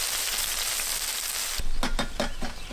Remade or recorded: recorded